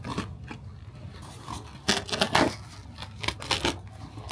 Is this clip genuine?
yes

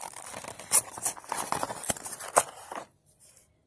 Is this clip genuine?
yes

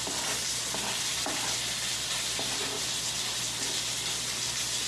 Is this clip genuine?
yes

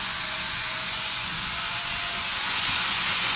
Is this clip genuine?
no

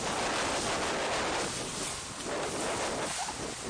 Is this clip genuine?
yes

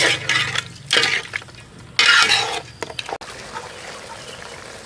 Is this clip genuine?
yes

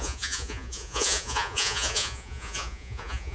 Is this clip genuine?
no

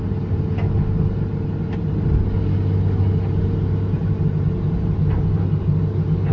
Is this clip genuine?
yes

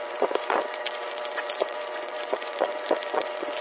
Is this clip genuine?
no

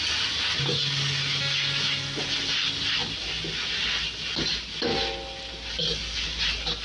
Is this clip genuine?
yes